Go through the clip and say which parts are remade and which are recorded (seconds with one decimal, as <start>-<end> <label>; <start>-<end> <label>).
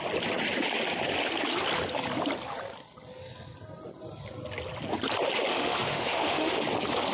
0.0-5.5 recorded; 5.5-6.6 remade; 6.6-7.1 recorded